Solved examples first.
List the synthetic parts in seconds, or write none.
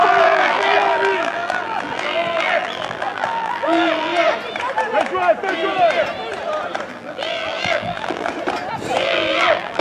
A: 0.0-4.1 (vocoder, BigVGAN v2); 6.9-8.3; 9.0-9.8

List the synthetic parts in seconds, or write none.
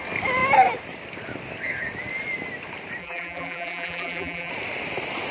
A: 3.0-4.5 (vocoder, BigVGAN v2)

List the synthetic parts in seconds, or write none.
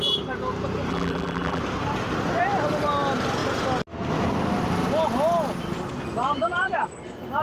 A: 0.9-1.6 (vocoder, BigVGAN v2)